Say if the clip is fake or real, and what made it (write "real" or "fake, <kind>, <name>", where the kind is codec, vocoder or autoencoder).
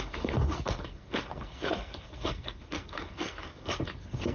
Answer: fake, codec, SNAC